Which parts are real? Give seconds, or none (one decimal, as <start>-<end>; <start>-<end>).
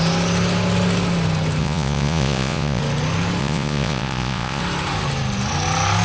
0.0-1.6; 2.8-3.4; 4.6-6.0